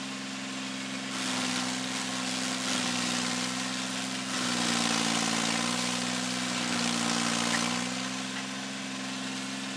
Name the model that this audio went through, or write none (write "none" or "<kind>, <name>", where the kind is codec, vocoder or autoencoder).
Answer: none